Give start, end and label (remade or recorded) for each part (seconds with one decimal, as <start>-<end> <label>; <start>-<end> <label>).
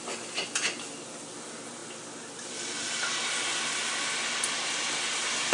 0.0-5.5 recorded